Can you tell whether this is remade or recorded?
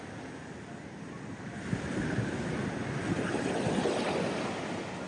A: recorded